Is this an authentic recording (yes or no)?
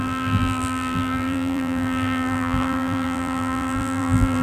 no